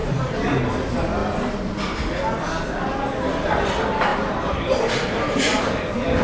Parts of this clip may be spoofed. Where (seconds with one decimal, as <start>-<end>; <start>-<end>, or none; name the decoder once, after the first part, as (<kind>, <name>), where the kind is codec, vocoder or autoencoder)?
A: 0.0-0.6 (vocoder, BigVGAN v2); 4.1-5.6